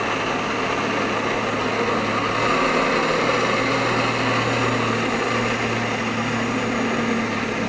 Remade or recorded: recorded